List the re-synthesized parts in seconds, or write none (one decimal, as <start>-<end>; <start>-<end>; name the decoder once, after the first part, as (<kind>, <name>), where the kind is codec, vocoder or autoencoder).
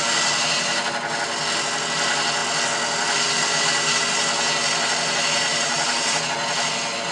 5.5-6.2 (vocoder, BigVGAN v2)